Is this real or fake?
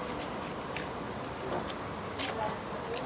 fake